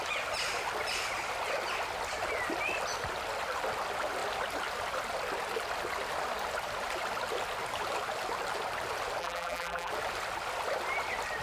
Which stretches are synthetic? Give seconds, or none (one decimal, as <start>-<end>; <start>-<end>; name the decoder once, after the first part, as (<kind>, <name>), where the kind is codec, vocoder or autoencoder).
9.2-9.9 (vocoder, BigVGAN v2)

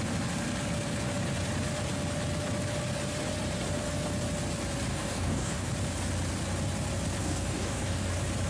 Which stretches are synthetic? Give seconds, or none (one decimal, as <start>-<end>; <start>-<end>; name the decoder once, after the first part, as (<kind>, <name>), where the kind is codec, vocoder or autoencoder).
4.9-5.7 (codec, DAC); 7.2-8.1

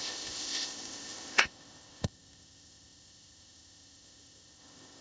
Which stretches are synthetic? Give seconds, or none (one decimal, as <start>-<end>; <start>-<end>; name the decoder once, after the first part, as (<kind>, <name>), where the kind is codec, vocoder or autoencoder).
0.0-5.0 (codec, ZipCodec)

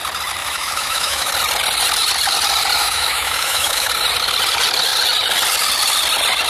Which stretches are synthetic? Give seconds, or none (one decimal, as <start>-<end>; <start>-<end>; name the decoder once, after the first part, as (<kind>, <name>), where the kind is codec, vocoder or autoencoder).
0.4-1.3 (autoencoder, DAC-VAE); 2.8-3.9